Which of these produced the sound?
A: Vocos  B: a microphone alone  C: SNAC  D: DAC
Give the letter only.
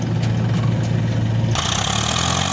B